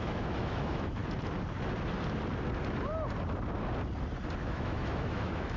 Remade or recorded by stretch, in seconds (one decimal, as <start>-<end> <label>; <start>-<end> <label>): 0.0-1.0 remade; 1.0-4.4 recorded; 4.4-5.6 remade